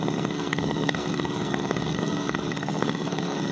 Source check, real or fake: fake